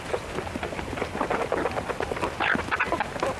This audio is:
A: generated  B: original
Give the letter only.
B